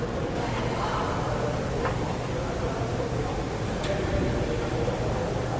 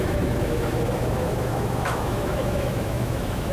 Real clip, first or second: first